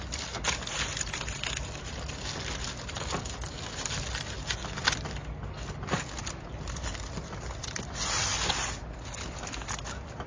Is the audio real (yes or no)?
yes